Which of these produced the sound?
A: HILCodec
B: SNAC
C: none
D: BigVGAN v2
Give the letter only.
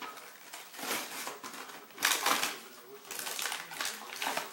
C